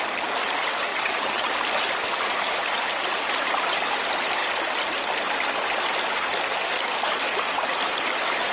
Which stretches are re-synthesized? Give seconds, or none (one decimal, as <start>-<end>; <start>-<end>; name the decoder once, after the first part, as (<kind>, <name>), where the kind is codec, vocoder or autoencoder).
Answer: 0.9-1.5 (vocoder, HiFi-GAN)